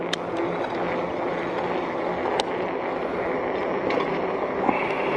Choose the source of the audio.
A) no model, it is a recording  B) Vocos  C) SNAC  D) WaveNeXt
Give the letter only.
A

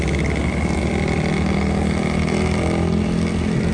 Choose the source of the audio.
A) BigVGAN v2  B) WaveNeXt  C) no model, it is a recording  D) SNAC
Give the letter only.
C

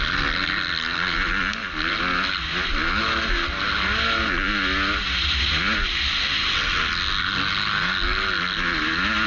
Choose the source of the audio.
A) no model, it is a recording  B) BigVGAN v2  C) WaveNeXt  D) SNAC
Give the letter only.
A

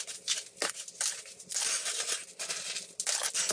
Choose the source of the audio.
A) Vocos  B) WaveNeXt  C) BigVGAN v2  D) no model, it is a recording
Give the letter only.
D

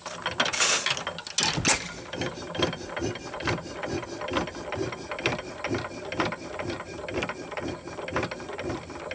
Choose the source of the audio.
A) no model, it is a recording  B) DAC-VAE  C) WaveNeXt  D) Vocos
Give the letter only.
A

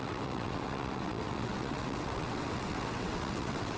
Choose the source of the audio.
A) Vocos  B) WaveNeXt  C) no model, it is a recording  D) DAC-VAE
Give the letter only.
B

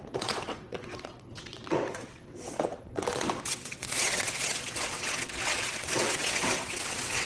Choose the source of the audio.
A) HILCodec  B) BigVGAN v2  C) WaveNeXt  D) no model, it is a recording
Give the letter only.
C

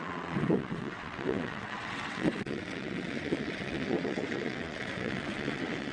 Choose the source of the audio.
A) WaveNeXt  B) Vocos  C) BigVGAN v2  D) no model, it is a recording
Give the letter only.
A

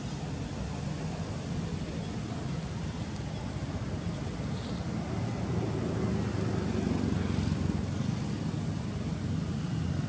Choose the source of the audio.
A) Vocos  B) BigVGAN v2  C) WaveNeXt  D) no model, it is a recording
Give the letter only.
D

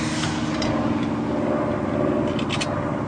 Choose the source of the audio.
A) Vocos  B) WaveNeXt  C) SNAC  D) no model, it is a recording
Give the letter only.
D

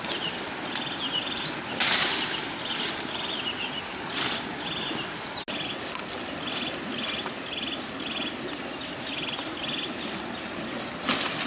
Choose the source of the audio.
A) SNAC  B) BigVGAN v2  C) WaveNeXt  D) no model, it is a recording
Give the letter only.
D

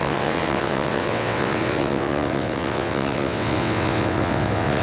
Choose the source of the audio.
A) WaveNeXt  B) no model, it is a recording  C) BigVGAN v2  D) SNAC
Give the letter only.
A